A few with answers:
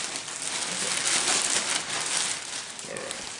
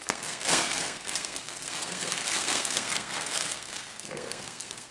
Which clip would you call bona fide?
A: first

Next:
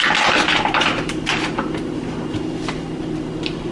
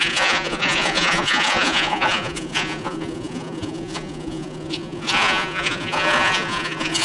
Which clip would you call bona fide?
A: first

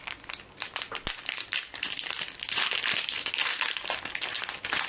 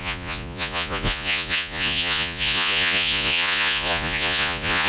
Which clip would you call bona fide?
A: first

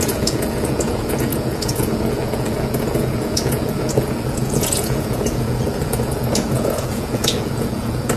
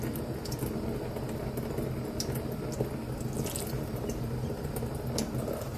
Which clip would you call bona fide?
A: second